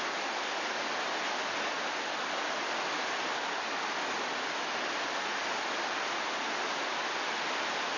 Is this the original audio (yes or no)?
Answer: yes